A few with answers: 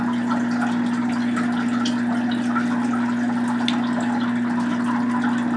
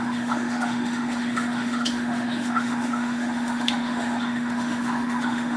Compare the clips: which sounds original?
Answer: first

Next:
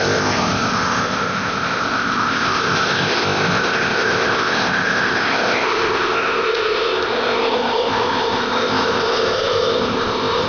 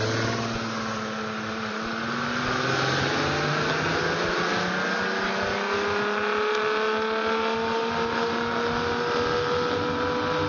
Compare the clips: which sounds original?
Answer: second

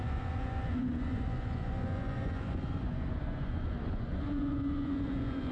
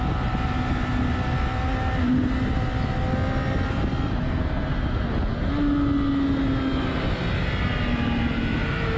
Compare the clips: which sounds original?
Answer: second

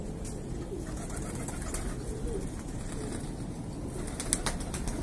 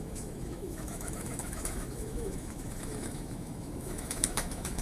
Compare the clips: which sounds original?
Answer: first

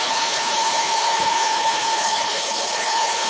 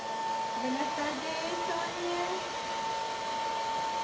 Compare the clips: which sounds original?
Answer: second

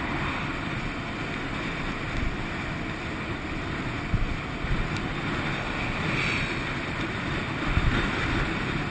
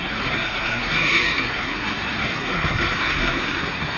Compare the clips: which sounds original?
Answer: first